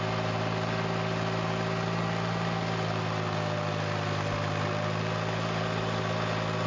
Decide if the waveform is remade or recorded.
recorded